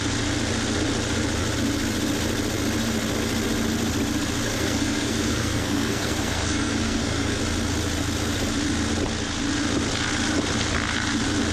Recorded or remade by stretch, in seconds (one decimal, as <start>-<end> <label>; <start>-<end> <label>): 0.0-4.5 recorded; 4.5-7.4 remade; 7.4-11.5 recorded